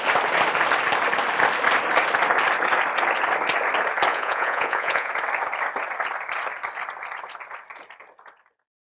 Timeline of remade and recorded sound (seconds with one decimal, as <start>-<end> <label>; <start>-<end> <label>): 0.0-4.1 recorded; 4.1-5.1 remade; 5.1-8.9 recorded